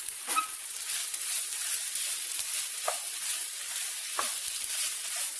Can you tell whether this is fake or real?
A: fake